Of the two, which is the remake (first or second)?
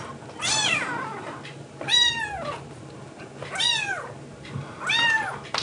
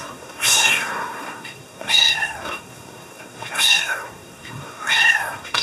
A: second